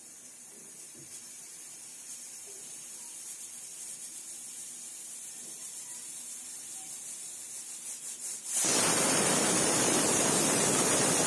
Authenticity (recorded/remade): remade